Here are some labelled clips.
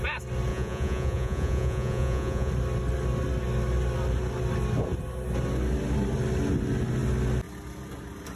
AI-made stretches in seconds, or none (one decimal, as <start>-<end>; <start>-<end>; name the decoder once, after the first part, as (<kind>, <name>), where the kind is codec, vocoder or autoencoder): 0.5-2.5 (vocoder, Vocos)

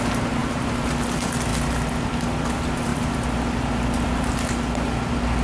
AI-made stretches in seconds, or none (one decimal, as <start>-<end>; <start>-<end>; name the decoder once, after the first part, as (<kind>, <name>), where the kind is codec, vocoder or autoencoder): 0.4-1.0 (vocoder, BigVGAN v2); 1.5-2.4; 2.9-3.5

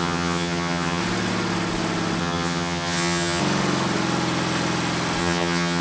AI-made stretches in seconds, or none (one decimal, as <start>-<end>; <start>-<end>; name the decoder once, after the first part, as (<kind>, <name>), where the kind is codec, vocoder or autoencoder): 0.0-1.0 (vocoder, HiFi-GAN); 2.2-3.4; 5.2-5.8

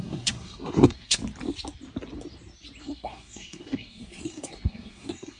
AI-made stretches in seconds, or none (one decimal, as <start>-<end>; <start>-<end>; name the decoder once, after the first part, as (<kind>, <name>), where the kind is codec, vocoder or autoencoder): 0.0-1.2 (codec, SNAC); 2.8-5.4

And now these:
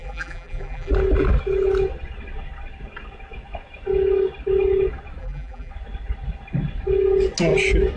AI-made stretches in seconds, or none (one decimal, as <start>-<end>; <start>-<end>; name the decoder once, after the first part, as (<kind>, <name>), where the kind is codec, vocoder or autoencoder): 0.0-0.9 (vocoder, BigVGAN v2); 5.2-5.7